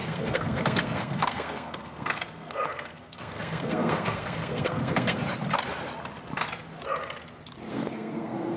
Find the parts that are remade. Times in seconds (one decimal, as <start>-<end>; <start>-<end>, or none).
0.0-5.2; 7.7-8.6